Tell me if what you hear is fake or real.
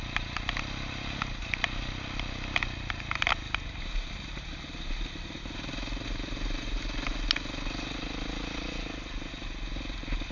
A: real